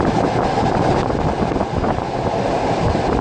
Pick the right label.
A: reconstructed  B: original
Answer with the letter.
B